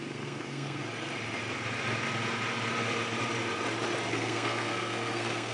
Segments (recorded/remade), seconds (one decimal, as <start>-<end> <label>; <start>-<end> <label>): 0.0-0.8 remade; 0.8-4.1 recorded; 4.1-5.5 remade